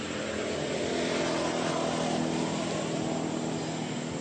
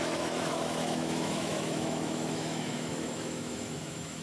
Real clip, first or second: first